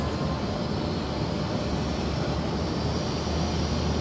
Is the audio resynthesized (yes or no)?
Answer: no